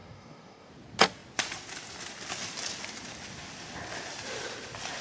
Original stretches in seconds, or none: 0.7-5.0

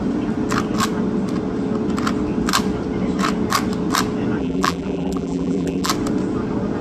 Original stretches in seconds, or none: 0.0-4.4; 5.9-6.8

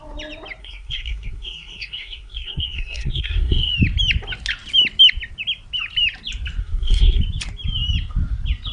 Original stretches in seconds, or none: 0.0-0.6; 3.7-6.6; 7.2-8.7

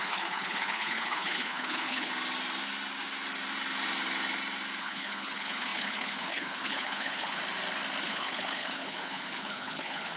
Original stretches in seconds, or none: 2.1-4.8; 7.4-8.0

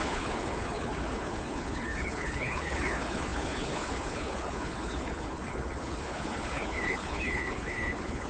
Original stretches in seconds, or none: none